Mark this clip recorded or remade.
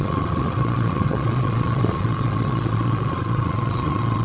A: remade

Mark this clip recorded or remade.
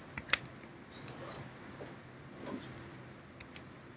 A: recorded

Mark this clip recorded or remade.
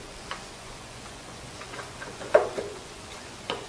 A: remade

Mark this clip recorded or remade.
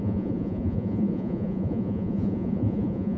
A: remade